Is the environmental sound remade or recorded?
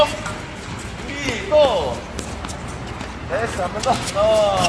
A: recorded